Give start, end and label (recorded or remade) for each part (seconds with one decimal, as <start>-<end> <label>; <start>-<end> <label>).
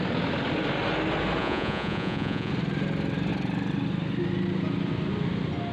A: 0.0-1.4 recorded; 1.4-2.5 remade; 2.5-5.7 recorded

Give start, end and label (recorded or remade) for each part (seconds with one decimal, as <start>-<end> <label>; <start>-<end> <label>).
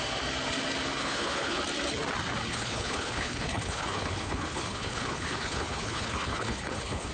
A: 0.0-1.0 recorded; 1.0-1.6 remade; 1.6-2.5 recorded; 2.5-7.1 remade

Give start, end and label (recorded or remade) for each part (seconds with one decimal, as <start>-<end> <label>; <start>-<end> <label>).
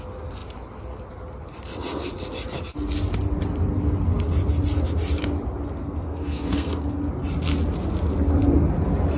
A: 0.0-5.8 recorded; 5.8-7.1 remade; 7.1-9.2 recorded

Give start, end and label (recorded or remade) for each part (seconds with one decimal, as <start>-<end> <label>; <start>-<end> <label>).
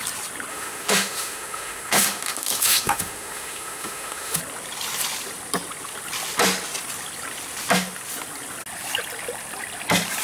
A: 0.0-0.5 recorded; 0.5-4.4 remade; 4.4-10.2 recorded